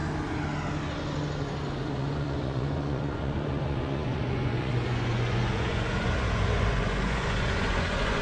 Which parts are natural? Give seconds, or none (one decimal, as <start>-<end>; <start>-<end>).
0.0-1.7